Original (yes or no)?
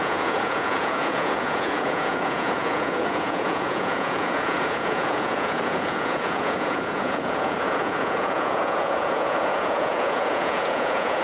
no